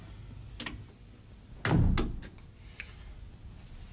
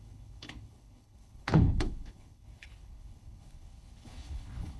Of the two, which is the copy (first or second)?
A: second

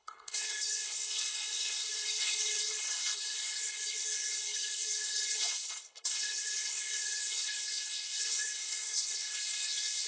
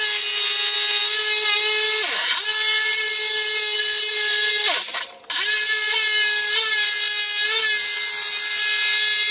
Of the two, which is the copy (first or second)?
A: first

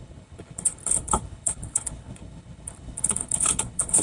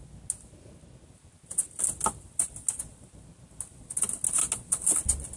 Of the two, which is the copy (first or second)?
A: first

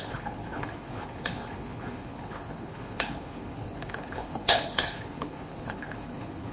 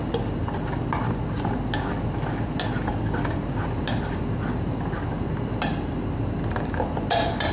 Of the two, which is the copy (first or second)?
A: first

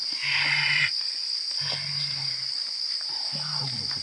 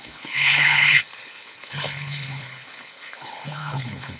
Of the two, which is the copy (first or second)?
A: second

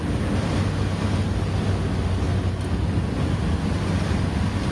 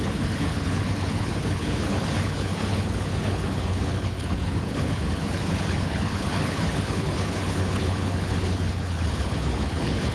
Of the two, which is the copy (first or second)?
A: second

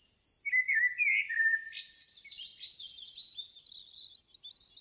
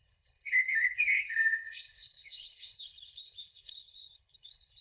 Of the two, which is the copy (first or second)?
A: second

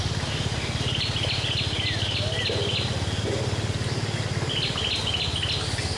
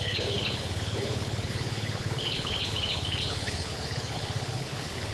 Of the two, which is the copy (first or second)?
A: second